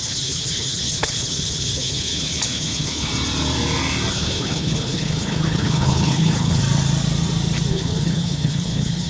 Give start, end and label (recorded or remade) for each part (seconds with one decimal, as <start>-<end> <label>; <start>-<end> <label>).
0.0-3.1 remade; 3.1-4.1 recorded; 4.1-6.6 remade; 6.6-7.7 recorded; 7.7-9.1 remade